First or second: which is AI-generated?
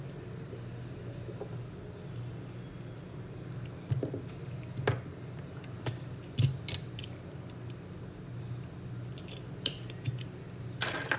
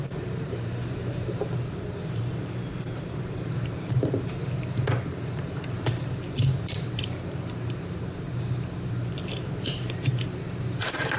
second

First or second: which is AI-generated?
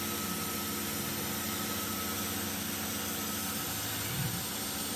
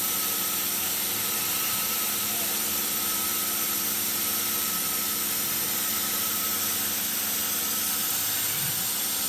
second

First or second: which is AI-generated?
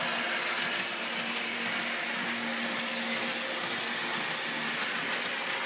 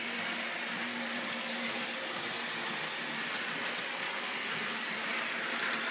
second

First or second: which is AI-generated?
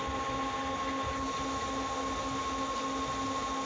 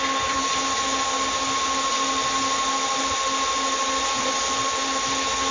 second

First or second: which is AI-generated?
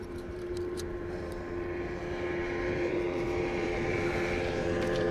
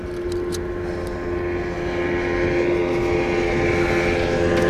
first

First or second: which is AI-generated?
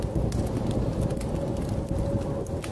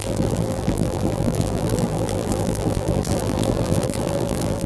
second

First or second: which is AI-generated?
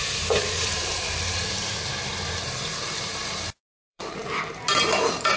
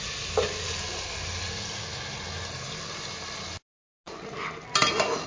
first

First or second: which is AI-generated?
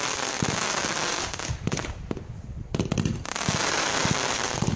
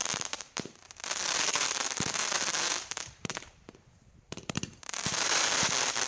second